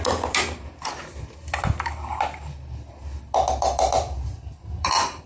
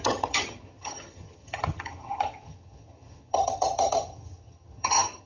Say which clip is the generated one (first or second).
second